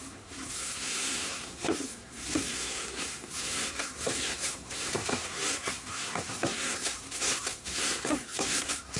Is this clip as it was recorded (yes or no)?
no